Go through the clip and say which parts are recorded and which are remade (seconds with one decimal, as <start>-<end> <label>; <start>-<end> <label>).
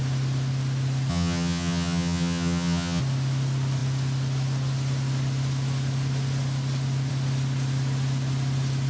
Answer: 0.0-1.1 recorded; 1.1-3.0 remade; 3.0-8.9 recorded